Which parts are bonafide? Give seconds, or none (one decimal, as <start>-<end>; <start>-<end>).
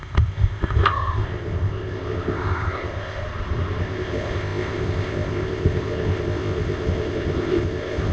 3.2-3.8